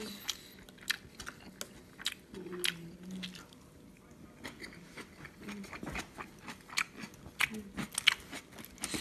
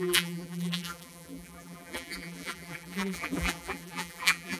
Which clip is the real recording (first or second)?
first